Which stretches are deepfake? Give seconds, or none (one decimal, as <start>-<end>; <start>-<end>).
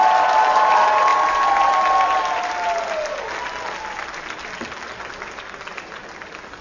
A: none